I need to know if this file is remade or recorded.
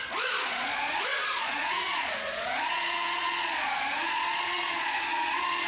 remade